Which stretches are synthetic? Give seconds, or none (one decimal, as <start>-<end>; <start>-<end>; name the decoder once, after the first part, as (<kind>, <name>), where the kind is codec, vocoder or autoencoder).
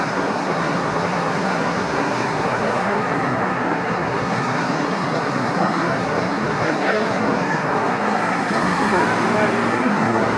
0.0-9.0 (codec, SNAC); 9.7-10.4